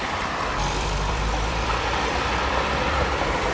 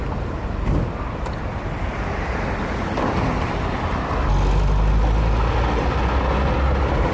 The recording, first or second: second